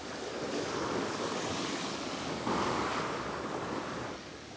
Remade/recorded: remade